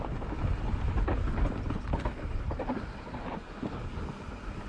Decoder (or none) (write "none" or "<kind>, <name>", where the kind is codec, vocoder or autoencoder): none